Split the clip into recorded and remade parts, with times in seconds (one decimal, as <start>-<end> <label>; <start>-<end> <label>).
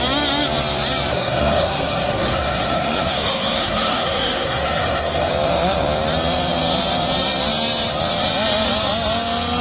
0.0-1.1 recorded; 1.1-5.3 remade; 5.3-9.6 recorded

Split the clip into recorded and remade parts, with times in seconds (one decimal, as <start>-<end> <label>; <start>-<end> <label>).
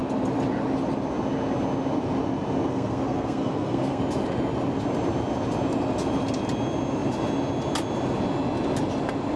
0.0-2.7 recorded; 2.7-4.0 remade; 4.0-9.4 recorded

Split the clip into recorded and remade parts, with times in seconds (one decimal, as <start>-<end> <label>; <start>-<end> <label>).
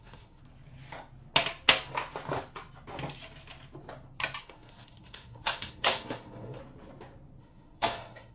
0.0-0.4 remade; 0.4-4.4 recorded; 4.4-6.6 remade; 6.6-7.4 recorded; 7.4-8.3 remade